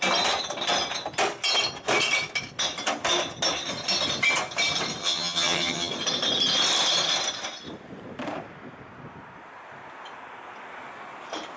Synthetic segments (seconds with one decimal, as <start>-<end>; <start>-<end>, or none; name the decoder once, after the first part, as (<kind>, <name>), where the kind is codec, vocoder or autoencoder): 5.0-5.9 (vocoder, HiFi-GAN)